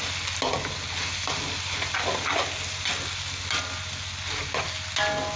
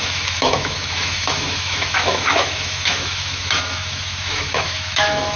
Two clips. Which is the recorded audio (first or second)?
first